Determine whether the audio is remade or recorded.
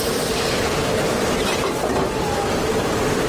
recorded